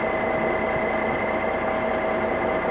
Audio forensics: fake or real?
real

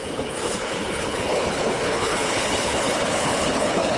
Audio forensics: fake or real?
fake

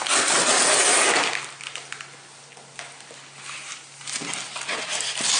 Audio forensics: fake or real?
real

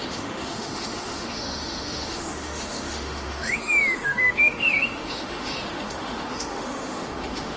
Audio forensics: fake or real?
fake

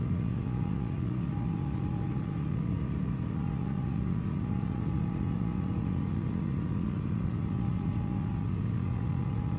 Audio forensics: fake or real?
fake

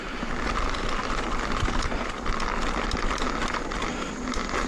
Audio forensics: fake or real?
real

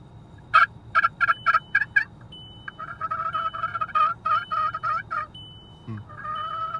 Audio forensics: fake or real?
real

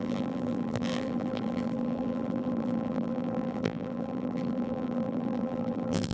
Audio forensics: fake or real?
fake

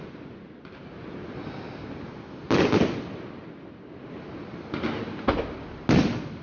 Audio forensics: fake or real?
real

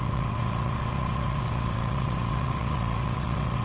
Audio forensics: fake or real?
fake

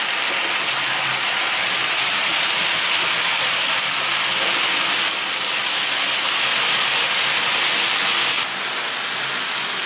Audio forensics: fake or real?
real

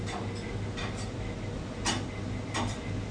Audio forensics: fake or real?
real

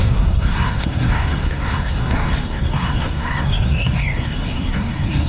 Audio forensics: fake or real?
fake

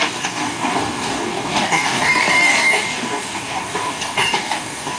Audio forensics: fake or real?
fake